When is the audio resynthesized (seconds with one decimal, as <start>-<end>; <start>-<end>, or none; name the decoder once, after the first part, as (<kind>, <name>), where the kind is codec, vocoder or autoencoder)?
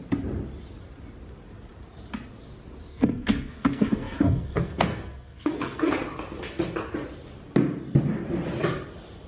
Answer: 2.9-5.9 (codec, SNAC)